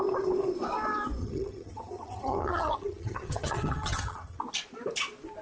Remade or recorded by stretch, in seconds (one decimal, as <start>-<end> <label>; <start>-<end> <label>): 0.0-1.2 recorded; 1.2-4.4 remade; 4.4-5.4 recorded

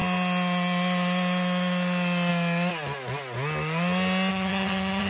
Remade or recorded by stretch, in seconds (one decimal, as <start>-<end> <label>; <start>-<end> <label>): 0.0-4.3 recorded; 4.3-5.1 remade

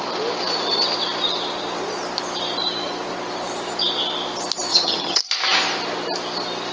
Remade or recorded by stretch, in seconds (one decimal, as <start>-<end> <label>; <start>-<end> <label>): 0.0-4.7 recorded; 4.7-5.2 remade; 5.2-6.7 recorded

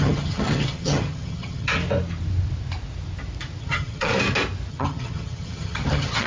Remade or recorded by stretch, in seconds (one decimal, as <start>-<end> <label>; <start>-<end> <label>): 0.0-1.7 remade; 1.7-3.6 recorded; 3.6-4.1 remade; 4.1-4.7 recorded; 4.7-6.3 remade

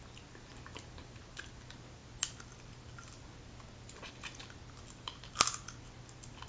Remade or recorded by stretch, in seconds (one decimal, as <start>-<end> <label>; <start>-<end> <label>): 0.0-6.5 recorded

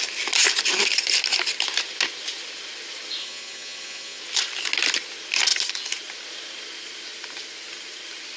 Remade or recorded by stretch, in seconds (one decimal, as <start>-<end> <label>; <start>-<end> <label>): 0.0-3.2 recorded; 3.2-4.2 remade; 4.2-8.4 recorded